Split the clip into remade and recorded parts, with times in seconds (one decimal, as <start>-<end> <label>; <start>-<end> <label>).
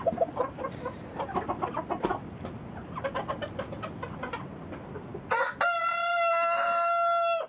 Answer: 0.0-7.5 recorded